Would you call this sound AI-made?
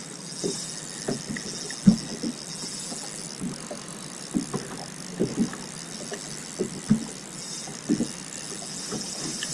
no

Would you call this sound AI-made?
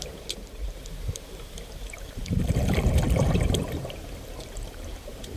yes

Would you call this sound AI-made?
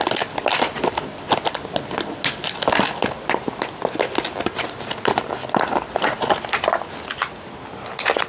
no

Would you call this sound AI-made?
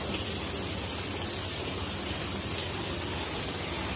no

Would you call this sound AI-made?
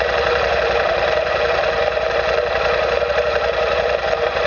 yes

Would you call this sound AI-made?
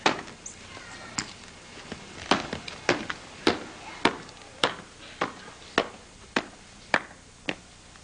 no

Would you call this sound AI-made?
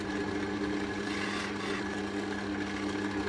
no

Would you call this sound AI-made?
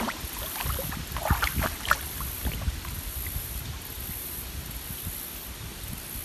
yes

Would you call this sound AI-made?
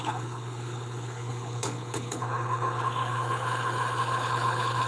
yes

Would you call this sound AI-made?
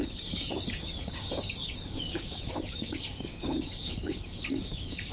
yes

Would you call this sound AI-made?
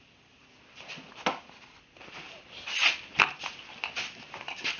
no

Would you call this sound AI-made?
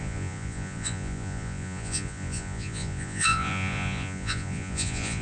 yes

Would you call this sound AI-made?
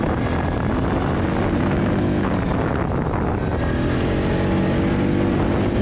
no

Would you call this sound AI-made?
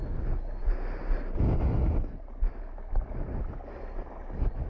no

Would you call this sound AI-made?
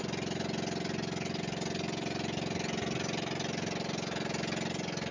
no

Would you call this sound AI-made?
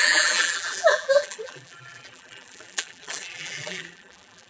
yes